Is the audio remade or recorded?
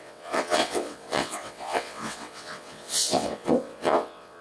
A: remade